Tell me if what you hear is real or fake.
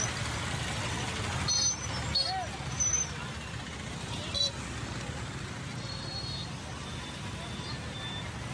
real